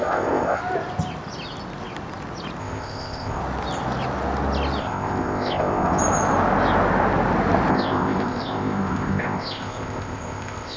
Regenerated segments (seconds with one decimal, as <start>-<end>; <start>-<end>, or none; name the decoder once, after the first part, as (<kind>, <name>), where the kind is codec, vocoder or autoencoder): 0.0-0.6 (codec, ZipCodec); 2.6-3.4; 4.8-6.0; 7.7-10.8

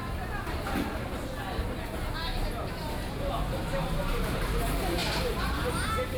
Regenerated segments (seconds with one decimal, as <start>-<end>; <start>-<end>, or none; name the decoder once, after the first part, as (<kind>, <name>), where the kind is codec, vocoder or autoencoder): 3.1-6.2 (vocoder, BigVGAN v2)

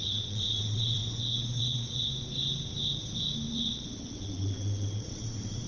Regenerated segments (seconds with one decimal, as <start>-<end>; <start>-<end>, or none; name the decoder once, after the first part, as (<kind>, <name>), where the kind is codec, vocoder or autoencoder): 0.0-1.0 (vocoder, WaveNeXt); 1.6-2.1; 3.5-5.7

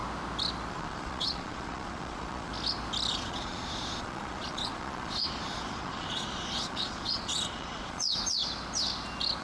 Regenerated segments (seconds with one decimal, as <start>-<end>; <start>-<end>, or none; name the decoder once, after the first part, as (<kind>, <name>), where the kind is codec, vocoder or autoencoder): 0.7-2.5 (vocoder, Vocos); 3.1-8.4

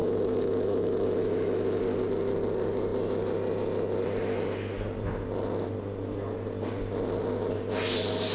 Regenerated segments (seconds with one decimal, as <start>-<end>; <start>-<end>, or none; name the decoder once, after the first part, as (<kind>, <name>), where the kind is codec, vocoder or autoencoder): 0.0-1.8 (autoencoder, DAC-VAE)

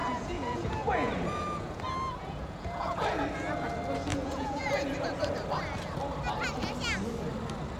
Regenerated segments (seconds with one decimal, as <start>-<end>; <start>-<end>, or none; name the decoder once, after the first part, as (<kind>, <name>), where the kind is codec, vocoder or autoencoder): 0.0-1.8 (vocoder, Vocos); 2.2-3.2; 4.1-4.7

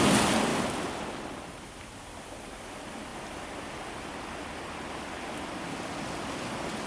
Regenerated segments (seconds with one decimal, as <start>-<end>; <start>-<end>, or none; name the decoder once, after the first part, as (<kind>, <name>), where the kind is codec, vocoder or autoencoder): none